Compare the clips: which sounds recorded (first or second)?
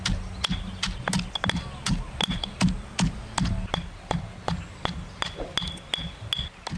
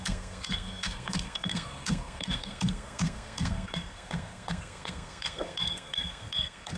first